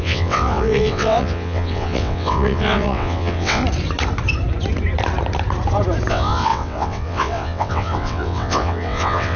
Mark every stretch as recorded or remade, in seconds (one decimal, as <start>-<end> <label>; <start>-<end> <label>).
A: 0.0-3.6 remade; 3.6-6.1 recorded; 6.1-9.4 remade